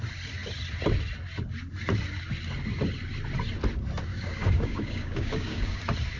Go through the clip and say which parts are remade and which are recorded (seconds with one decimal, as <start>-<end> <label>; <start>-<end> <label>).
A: 0.0-4.1 recorded; 4.1-5.8 remade; 5.8-6.2 recorded